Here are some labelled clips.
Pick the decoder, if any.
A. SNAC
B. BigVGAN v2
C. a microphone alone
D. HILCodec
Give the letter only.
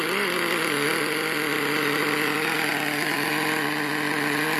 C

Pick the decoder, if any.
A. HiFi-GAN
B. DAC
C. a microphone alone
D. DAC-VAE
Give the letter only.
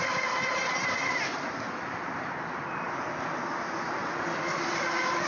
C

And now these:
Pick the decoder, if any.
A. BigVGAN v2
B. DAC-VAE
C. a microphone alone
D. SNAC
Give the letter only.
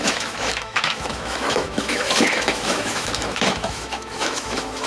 B